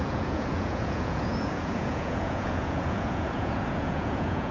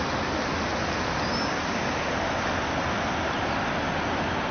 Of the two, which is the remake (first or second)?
first